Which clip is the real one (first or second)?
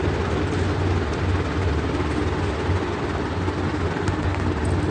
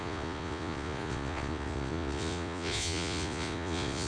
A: first